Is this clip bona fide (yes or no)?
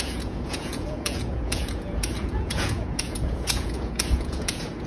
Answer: no